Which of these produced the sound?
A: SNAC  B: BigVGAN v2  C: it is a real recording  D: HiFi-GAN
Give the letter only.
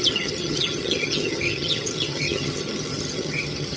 D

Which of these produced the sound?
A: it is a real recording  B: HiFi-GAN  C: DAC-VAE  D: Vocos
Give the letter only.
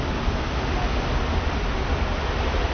A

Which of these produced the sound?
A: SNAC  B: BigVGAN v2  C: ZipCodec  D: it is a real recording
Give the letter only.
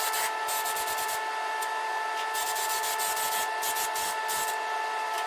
D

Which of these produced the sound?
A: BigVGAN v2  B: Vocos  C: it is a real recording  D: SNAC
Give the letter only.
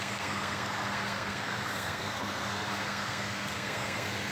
D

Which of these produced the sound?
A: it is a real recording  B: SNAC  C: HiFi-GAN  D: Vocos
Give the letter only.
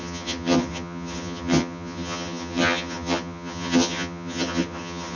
C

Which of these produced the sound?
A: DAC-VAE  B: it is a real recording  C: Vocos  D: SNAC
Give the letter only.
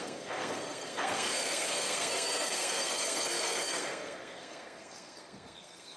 D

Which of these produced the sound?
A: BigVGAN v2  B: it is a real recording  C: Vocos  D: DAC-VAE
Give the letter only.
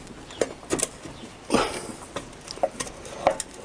B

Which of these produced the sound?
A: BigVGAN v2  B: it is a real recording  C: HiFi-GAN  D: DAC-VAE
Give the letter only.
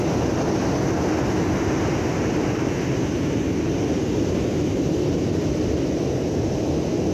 B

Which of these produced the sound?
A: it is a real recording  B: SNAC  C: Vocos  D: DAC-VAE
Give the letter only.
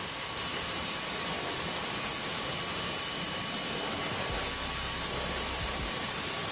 A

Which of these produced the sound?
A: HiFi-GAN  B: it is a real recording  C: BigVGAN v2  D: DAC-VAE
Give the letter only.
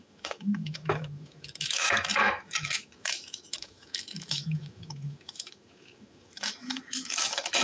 D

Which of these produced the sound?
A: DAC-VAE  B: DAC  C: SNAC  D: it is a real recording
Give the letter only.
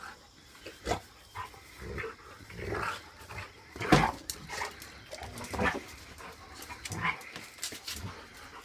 D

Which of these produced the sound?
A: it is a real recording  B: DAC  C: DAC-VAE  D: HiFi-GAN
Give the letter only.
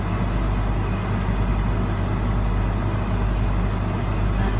A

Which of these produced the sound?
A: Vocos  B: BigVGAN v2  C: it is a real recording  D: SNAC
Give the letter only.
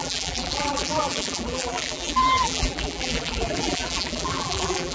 B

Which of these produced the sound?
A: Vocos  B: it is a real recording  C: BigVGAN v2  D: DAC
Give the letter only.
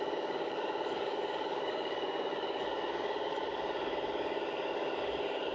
D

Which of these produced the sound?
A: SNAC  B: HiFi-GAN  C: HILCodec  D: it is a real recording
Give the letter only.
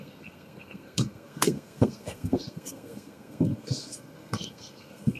A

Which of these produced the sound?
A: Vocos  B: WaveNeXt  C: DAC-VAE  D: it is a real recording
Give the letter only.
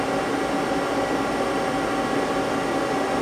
D